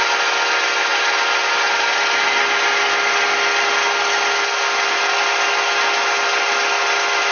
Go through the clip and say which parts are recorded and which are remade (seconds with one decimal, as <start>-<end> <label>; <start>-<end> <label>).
0.0-7.3 recorded